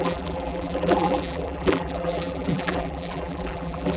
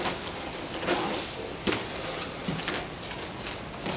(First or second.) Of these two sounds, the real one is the second